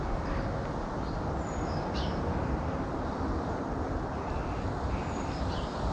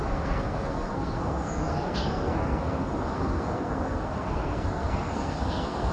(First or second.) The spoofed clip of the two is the second